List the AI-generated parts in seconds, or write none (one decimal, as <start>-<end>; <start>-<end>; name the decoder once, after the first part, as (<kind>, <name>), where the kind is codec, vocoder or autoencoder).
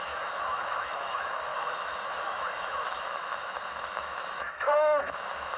0.0-5.6 (autoencoder, DAC-VAE)